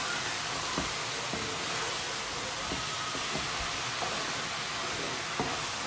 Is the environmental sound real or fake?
real